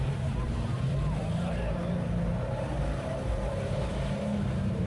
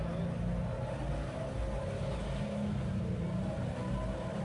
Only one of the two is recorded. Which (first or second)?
second